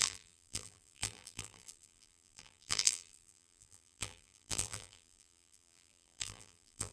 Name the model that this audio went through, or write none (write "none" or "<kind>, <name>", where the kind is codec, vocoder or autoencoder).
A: vocoder, BigVGAN v2